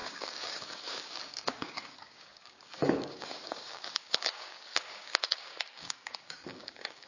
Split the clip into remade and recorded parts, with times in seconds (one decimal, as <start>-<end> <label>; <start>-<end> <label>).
0.0-7.1 remade